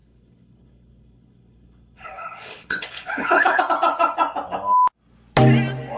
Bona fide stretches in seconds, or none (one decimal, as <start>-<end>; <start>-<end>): 3.6-6.0